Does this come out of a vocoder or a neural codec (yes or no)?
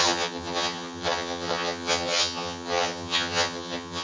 yes